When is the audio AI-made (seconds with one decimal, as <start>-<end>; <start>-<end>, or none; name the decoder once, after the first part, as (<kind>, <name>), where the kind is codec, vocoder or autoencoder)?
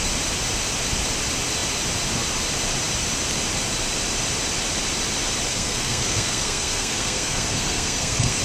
5.5-8.4 (codec, SNAC)